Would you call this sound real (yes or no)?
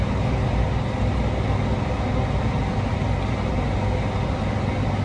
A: yes